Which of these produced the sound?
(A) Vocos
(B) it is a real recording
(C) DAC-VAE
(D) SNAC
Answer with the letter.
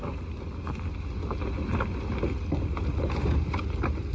B